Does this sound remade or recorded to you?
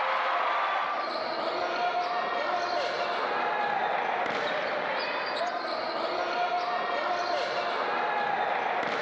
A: recorded